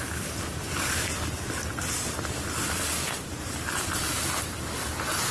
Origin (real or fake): real